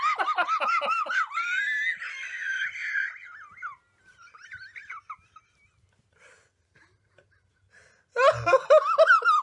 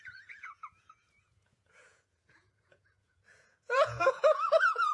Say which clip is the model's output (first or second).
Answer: second